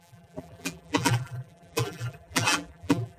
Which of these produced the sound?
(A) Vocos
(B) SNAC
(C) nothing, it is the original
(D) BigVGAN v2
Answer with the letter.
D